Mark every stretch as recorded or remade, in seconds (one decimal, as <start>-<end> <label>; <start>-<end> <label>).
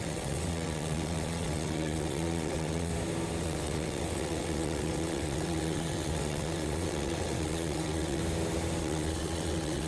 0.0-2.9 remade; 2.9-3.4 recorded; 3.4-8.2 remade; 8.2-8.8 recorded; 8.8-9.9 remade